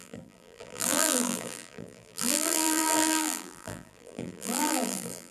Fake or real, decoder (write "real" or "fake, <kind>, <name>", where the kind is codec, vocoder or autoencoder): fake, vocoder, BigVGAN v2